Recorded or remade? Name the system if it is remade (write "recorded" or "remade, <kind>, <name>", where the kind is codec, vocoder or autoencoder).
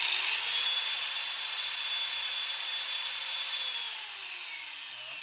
recorded